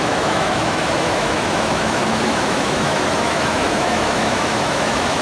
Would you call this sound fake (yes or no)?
yes